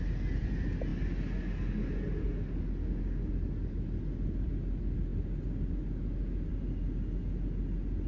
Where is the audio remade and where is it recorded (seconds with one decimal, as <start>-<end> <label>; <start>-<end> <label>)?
0.0-2.8 recorded; 2.8-3.3 remade; 3.3-8.1 recorded